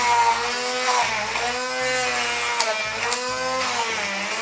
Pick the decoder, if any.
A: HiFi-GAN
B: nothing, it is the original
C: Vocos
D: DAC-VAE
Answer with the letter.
B